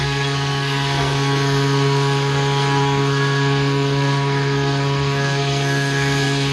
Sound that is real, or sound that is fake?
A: fake